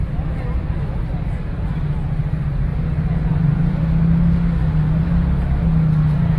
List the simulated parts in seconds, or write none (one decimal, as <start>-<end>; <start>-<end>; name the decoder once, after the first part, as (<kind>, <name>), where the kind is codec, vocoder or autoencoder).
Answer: none